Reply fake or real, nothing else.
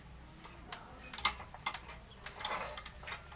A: real